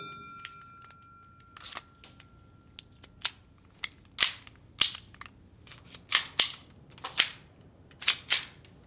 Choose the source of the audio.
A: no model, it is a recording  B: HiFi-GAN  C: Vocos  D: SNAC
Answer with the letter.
A